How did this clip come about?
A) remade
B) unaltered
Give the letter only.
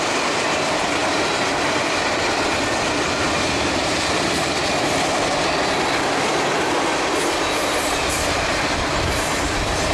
A